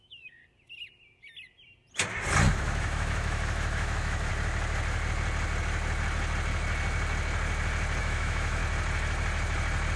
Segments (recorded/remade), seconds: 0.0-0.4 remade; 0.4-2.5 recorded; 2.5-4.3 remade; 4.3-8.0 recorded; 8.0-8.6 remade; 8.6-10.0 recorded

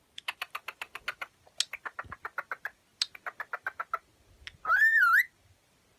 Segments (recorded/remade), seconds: 0.0-6.0 recorded

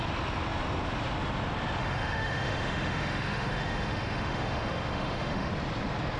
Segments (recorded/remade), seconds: 0.0-1.8 recorded; 1.8-5.5 remade; 5.5-6.2 recorded

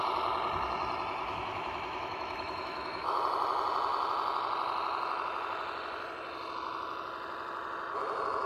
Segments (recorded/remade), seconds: 0.0-1.2 recorded; 1.2-3.2 remade; 3.2-8.5 recorded

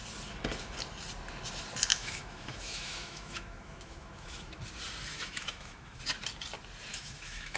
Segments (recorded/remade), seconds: 0.0-1.9 recorded; 1.9-4.6 remade; 4.6-5.1 recorded; 5.1-6.0 remade; 6.0-6.9 recorded; 6.9-7.6 remade